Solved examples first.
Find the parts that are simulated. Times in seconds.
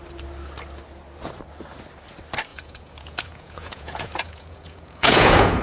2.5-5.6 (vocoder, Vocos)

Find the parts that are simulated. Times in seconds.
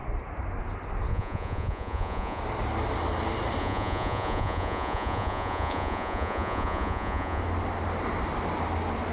1.1-2.4 (vocoder, Vocos); 3.6-7.4